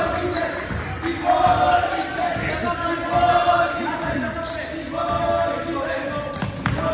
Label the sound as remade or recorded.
recorded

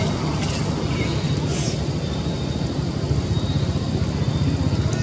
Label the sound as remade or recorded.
recorded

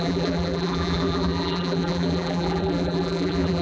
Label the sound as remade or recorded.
remade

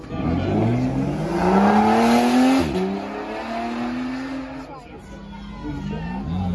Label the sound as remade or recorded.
recorded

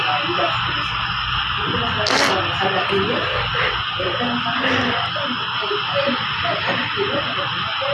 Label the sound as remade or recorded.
recorded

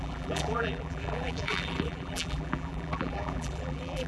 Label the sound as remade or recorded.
remade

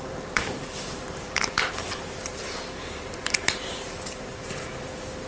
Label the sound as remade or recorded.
remade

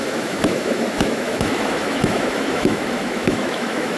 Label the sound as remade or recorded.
remade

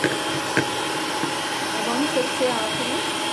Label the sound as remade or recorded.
recorded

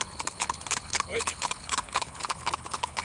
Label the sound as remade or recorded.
remade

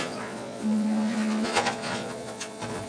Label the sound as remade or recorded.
remade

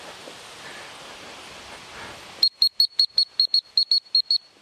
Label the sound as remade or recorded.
recorded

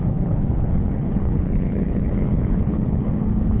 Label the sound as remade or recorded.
remade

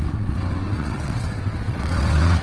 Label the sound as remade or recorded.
remade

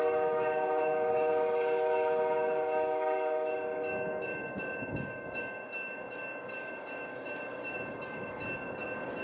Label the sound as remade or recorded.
remade